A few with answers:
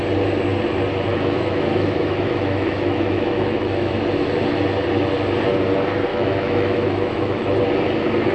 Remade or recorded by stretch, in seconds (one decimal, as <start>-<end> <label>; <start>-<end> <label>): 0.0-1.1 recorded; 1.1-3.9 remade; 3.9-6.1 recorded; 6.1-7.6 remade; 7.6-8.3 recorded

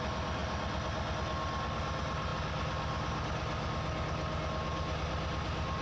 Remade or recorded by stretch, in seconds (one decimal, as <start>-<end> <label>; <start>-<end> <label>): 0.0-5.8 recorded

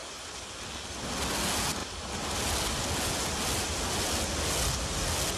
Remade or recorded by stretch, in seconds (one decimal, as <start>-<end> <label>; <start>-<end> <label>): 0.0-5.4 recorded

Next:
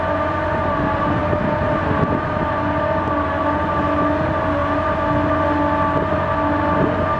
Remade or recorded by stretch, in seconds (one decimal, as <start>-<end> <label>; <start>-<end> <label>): 0.0-7.2 recorded